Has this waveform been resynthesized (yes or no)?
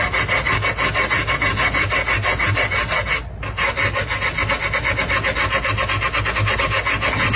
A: no